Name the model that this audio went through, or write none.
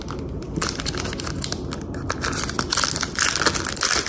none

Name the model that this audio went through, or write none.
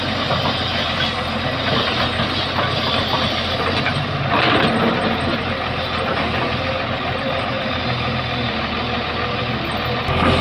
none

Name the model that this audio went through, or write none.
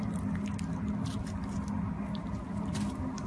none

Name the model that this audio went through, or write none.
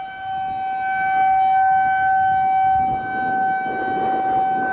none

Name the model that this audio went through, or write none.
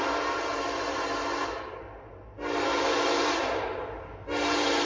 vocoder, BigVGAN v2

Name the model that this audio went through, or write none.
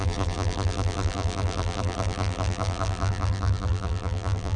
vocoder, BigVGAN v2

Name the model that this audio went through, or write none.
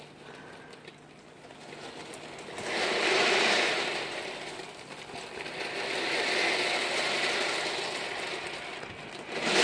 vocoder, BigVGAN v2